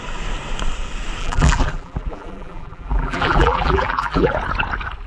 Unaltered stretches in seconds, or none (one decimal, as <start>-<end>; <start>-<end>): 0.0-1.2; 4.3-5.1